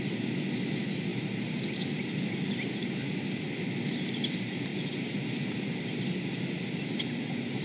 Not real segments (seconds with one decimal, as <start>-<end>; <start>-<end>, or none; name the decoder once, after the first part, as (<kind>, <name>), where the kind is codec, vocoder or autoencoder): none